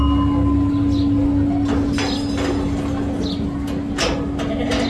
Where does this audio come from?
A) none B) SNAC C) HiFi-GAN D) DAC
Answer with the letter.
A